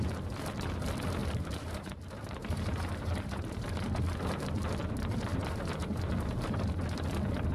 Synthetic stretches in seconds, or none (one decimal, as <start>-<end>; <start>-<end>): 1.2-3.7; 5.3-6.0